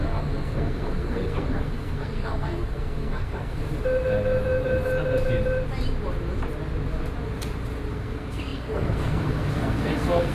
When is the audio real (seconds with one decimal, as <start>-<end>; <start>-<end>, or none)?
3.6-7.9